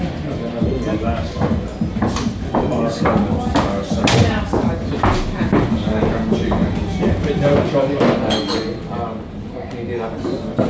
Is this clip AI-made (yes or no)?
no